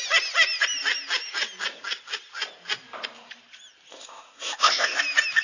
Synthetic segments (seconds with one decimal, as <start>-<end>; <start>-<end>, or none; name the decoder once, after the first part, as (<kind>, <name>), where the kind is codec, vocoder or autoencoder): 3.9-5.0 (codec, ZipCodec)